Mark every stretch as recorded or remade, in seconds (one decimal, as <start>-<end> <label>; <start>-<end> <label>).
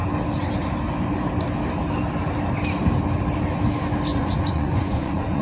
0.0-4.1 recorded; 4.1-5.4 remade